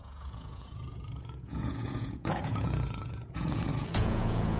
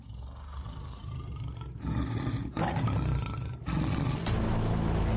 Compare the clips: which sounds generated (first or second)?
first